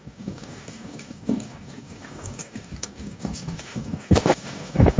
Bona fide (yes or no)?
no